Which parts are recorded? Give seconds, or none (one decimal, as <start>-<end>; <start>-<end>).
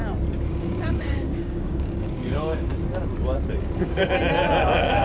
0.0-0.5; 2.7-3.6; 4.0-4.6